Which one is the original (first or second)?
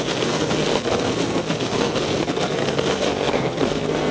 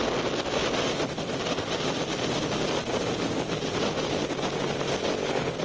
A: second